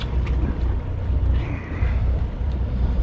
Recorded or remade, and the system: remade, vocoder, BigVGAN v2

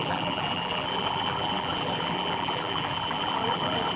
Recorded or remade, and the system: remade, vocoder, BigVGAN v2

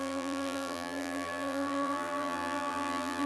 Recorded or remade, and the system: remade, vocoder, BigVGAN v2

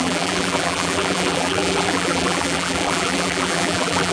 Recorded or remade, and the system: remade, vocoder, BigVGAN v2